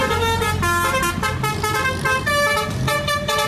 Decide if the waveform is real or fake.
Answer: real